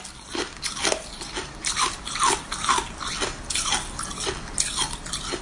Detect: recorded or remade remade